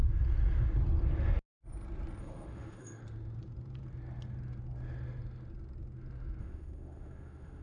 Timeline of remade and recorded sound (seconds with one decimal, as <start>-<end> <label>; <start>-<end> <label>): 0.0-2.2 recorded; 2.2-3.0 remade; 3.0-6.4 recorded; 6.4-7.6 remade